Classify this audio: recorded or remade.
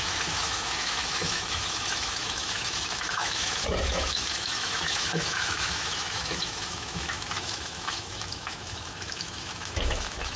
remade